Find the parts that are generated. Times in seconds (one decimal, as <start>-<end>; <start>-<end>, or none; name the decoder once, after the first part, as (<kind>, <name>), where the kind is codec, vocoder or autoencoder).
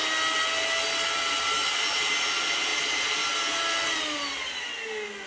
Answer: 2.7-3.3 (vocoder, BigVGAN v2)